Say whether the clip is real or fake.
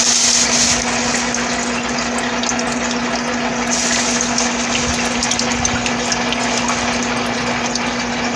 real